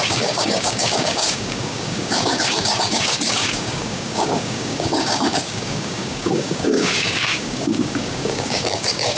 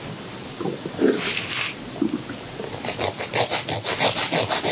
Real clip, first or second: second